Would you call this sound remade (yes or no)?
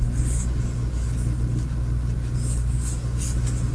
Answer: no